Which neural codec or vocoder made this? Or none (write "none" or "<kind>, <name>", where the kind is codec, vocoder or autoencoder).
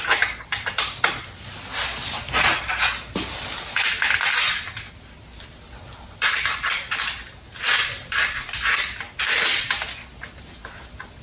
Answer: none